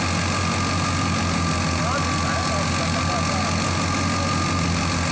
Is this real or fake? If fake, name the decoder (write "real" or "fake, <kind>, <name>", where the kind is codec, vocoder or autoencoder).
real